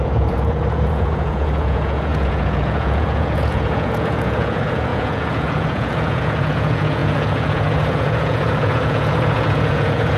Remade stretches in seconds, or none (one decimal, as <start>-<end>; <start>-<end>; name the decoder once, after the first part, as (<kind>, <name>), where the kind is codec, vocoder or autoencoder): 0.0-10.2 (vocoder, Vocos)